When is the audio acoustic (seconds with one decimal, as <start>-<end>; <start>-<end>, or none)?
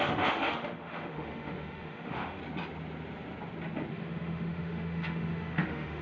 2.4-3.9